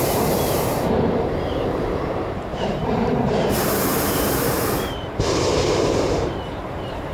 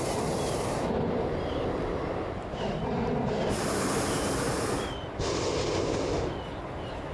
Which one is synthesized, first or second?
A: first